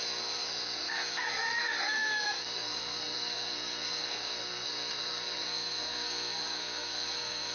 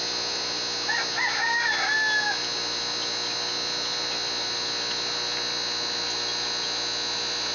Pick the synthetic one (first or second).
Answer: first